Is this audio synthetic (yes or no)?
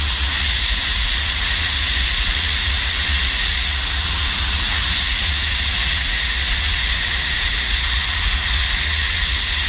yes